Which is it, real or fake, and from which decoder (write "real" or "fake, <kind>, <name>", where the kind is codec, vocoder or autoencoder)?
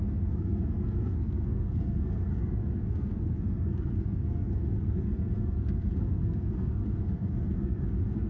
fake, codec, SNAC